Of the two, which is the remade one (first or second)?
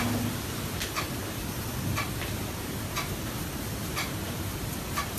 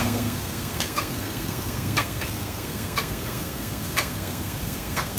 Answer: second